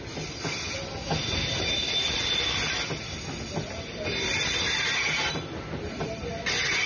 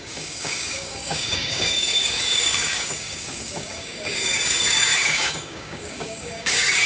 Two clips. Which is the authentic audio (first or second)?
first